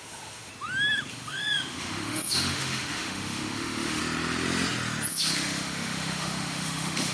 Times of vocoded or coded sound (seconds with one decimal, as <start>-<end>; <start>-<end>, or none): 0.0-0.5; 1.1-4.0; 5.1-7.1

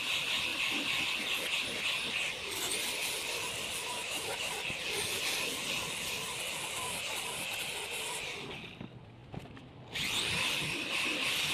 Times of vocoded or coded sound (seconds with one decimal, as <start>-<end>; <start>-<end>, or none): 3.8-4.5

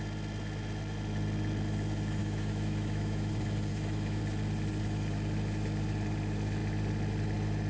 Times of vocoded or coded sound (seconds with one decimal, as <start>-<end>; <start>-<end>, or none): 2.2-3.3; 3.7-4.2

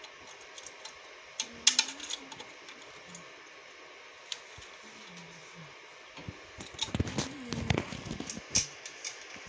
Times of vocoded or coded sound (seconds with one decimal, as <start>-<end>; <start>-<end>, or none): none